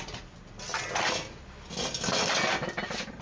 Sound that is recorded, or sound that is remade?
recorded